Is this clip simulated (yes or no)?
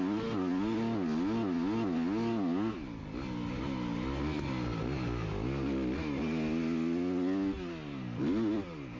no